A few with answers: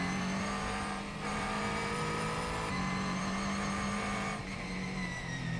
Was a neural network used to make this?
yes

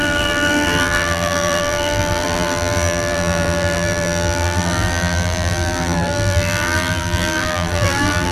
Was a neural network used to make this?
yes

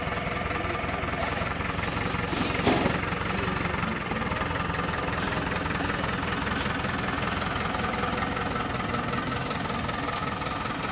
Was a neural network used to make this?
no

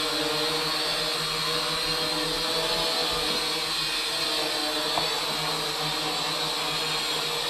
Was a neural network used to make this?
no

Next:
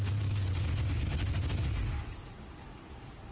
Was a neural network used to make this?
no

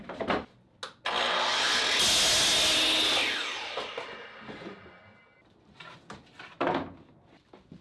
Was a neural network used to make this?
no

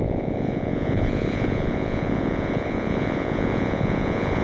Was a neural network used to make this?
yes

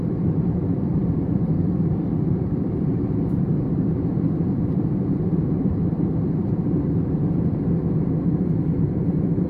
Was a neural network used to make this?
yes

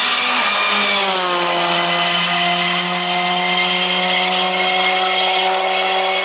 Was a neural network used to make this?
no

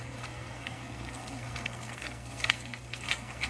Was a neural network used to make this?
yes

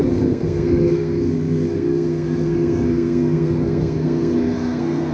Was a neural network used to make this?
yes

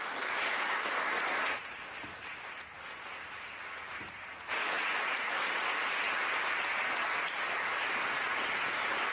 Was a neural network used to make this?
no